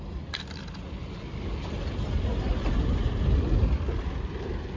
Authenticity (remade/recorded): recorded